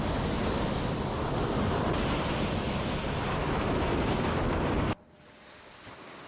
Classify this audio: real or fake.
real